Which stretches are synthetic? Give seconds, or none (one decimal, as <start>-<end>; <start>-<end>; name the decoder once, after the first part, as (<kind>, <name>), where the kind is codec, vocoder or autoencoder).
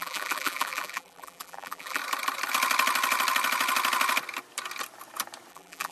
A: 0.0-2.0 (vocoder, BigVGAN v2); 5.5-5.9